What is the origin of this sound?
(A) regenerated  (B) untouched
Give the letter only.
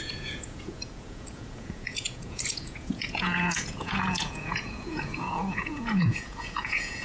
A